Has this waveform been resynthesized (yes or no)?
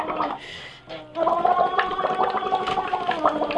no